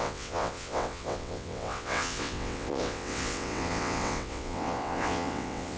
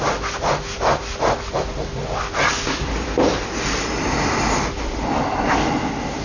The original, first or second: second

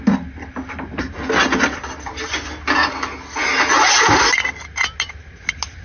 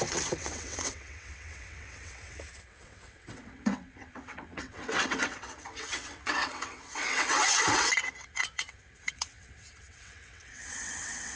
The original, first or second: first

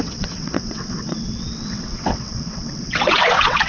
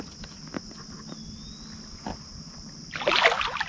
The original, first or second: second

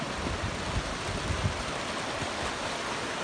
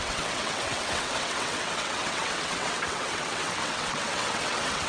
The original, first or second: first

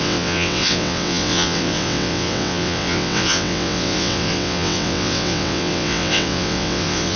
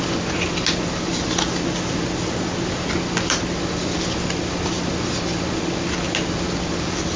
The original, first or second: second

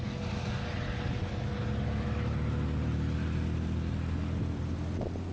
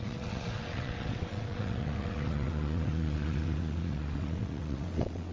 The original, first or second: first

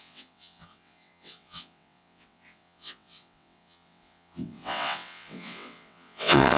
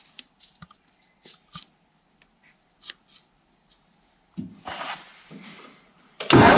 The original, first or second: second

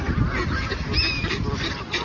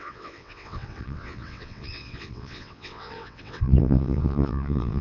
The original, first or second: first